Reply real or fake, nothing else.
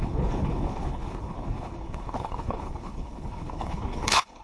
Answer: fake